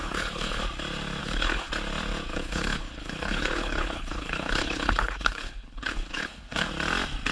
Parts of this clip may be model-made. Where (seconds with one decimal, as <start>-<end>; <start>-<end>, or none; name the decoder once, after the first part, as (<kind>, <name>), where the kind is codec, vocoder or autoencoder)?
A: 0.0-0.6 (codec, HILCodec); 1.2-1.7; 2.3-6.7